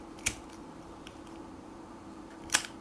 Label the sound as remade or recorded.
remade